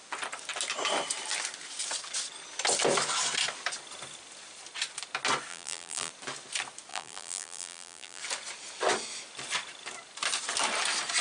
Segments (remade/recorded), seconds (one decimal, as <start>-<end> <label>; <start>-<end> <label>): 0.0-5.5 recorded; 5.5-6.1 remade; 6.1-6.9 recorded; 6.9-8.2 remade; 8.2-11.2 recorded